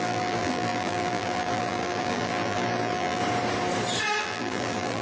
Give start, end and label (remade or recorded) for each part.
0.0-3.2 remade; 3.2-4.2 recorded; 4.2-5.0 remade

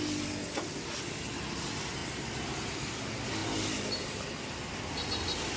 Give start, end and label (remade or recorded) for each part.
0.0-5.6 recorded

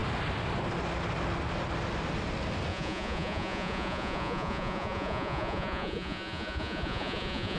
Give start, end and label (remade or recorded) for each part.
0.0-2.7 recorded; 2.7-7.6 remade

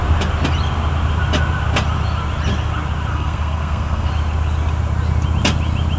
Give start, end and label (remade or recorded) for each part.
0.0-3.1 recorded; 3.1-4.1 remade; 4.1-6.0 recorded

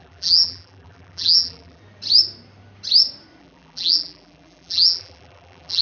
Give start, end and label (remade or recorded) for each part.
0.0-1.8 remade; 1.8-3.4 recorded; 3.4-5.8 remade

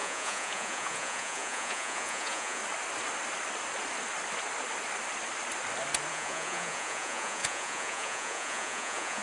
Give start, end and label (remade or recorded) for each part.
0.0-2.6 remade; 2.6-6.1 recorded; 6.1-9.2 remade

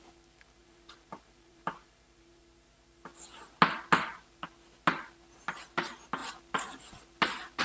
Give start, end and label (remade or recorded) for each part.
0.0-0.6 recorded; 0.6-2.4 remade; 2.4-7.6 recorded